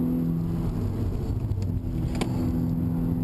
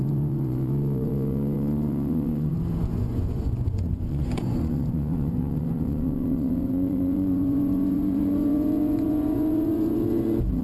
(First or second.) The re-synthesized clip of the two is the second